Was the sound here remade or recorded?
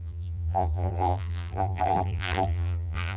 remade